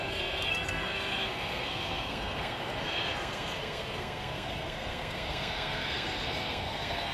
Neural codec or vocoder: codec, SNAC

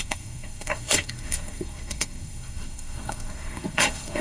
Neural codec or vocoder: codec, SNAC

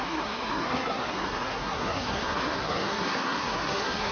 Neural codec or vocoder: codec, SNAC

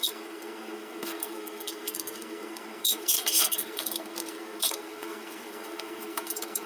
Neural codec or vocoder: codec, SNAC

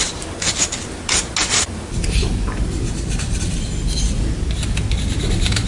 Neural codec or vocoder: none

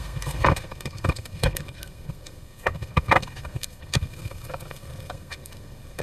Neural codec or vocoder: codec, SNAC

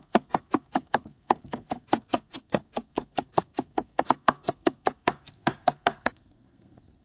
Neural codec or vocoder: codec, SNAC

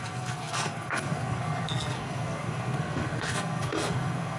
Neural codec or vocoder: codec, SNAC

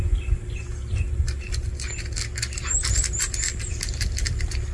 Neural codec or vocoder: none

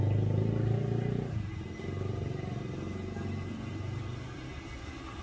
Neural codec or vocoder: none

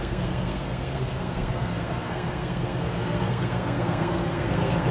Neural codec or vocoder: codec, SNAC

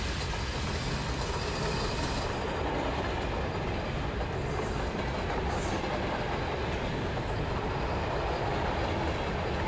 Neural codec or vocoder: none